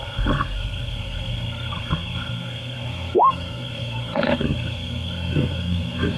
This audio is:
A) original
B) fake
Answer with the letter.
B